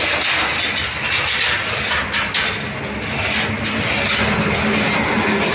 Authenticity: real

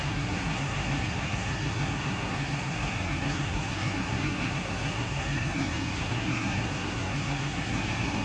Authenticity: fake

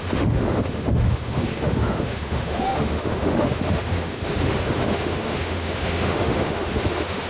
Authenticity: fake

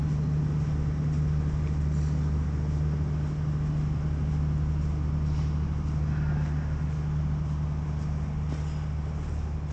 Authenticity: real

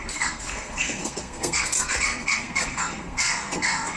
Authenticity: fake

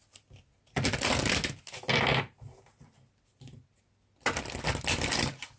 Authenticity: real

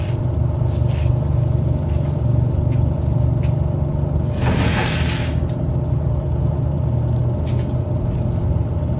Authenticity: real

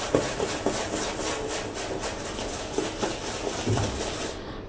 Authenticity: real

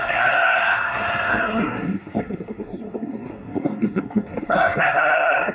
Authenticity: fake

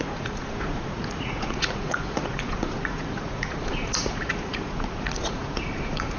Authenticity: fake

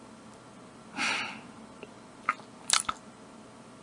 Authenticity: real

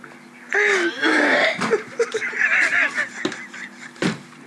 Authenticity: real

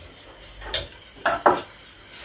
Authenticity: real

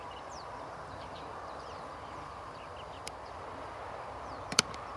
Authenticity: fake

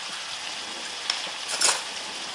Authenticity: real